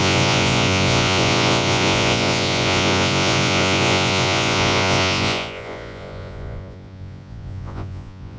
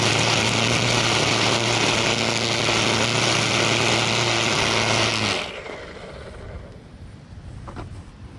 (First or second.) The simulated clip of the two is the first